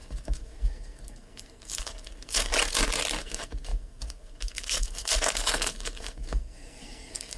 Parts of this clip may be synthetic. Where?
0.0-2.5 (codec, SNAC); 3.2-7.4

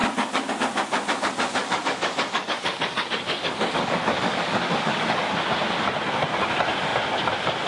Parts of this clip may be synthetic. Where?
0.0-0.5 (codec, DAC); 1.6-5.3

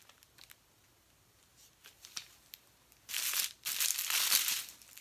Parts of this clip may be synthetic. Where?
none

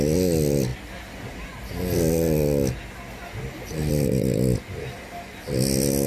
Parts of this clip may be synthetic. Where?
none